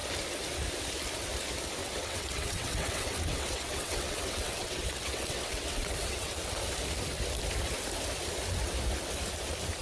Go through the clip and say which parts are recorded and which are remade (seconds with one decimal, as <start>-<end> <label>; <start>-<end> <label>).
0.0-1.8 recorded; 1.8-6.5 remade; 6.5-9.8 recorded